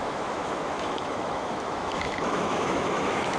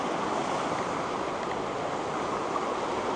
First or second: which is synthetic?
first